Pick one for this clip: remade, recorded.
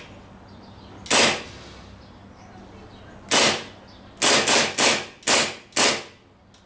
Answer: recorded